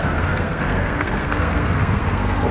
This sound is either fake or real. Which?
fake